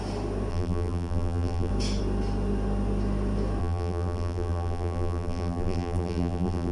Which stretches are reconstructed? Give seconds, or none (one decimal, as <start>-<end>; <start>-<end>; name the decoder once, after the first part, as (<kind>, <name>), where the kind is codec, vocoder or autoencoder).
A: 0.5-1.7 (vocoder, BigVGAN v2); 3.6-6.7